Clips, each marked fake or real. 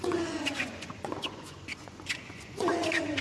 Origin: fake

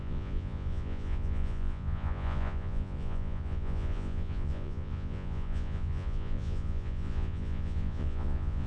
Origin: fake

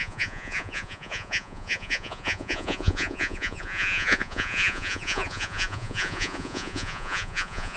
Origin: fake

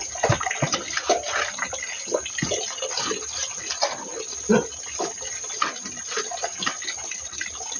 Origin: real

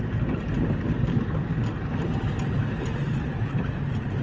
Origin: real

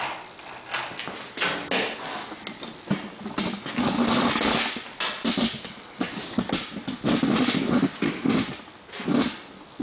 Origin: real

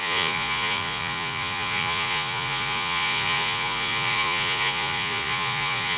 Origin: fake